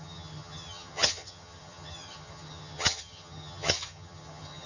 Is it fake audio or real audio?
fake